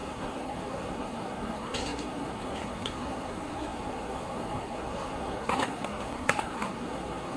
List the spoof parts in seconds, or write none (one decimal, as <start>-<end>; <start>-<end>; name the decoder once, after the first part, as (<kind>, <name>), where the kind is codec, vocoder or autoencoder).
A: 0.0-7.4 (codec, SNAC)